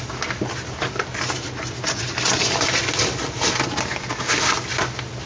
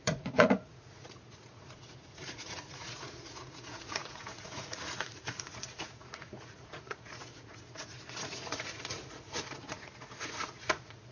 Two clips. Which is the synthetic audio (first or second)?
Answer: second